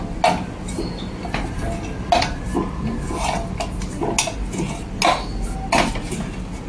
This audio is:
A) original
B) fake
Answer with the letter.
A